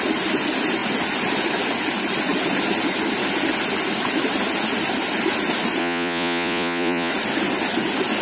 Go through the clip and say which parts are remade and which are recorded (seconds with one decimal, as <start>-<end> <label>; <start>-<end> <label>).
0.0-5.8 recorded; 5.8-7.1 remade; 7.1-8.2 recorded